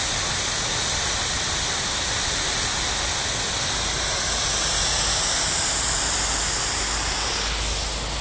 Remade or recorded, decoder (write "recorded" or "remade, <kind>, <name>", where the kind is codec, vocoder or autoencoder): recorded